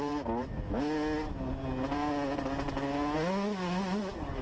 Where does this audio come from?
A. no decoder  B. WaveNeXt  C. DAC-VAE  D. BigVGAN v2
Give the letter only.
A